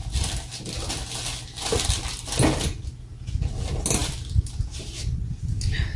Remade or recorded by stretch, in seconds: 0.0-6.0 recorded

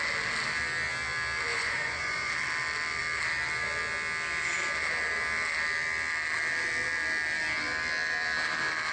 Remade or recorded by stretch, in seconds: 0.0-1.5 recorded; 1.5-2.3 remade; 2.3-8.9 recorded

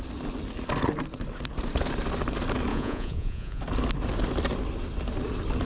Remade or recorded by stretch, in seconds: 0.0-2.7 recorded; 2.7-3.6 remade; 3.6-5.6 recorded

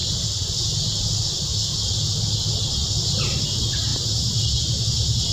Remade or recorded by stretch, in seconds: 0.0-5.3 recorded

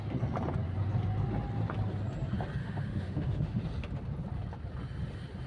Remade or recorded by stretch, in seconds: 0.0-2.6 recorded; 2.6-3.6 remade; 3.6-5.5 recorded